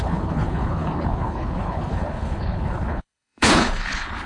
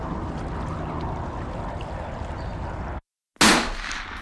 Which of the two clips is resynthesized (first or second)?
first